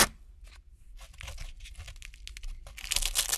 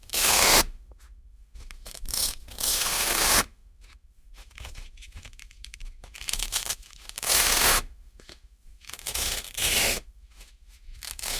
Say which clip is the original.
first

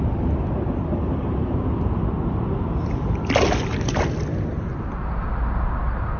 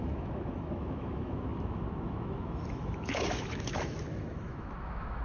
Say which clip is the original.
first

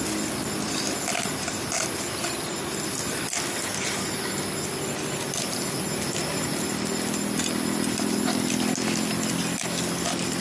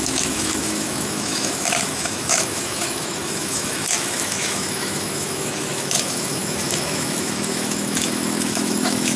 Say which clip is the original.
first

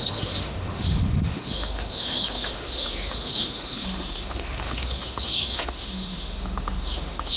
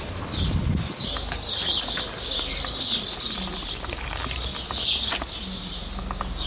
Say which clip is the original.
second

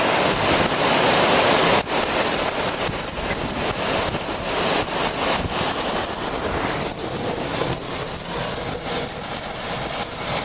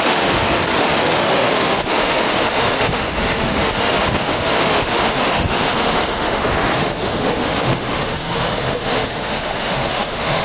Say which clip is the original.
first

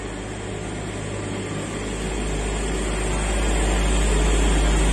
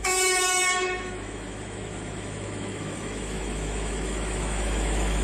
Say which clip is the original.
first